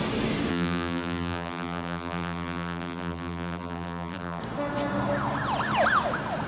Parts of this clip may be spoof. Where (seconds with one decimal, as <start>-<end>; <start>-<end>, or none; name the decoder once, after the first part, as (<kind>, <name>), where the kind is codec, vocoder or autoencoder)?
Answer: 0.5-4.4 (vocoder, BigVGAN v2)